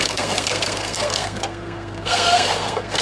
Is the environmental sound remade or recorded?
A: remade